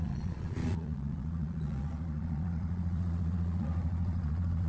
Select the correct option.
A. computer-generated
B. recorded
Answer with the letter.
A